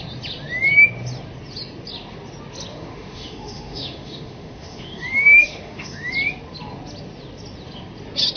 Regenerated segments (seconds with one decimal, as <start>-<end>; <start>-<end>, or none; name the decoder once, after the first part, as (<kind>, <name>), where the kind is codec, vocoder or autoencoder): 2.7-6.1 (autoencoder, DAC-VAE)